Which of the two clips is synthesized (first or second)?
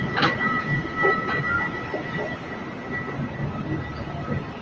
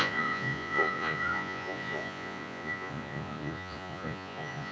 second